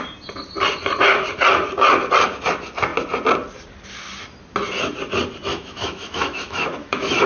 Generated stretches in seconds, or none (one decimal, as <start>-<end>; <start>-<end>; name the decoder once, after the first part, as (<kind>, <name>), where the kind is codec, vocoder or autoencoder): 5.5-7.3 (autoencoder, DAC-VAE)